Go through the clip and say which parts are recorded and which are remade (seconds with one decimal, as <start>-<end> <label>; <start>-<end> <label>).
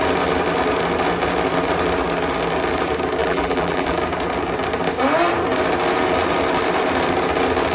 0.0-3.2 recorded; 3.2-4.0 remade; 4.0-7.7 recorded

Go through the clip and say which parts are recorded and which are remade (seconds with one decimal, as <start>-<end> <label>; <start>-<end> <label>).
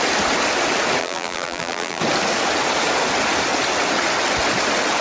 0.0-1.0 recorded; 1.0-2.0 remade; 2.0-5.0 recorded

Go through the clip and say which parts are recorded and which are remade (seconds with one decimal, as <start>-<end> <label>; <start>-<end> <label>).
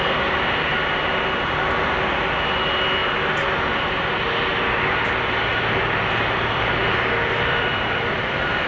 0.0-5.5 recorded; 5.5-8.7 remade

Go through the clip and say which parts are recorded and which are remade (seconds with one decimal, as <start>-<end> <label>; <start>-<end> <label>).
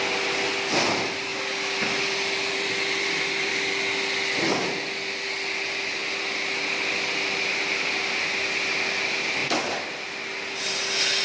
0.0-1.3 recorded; 1.3-3.5 remade; 3.5-11.2 recorded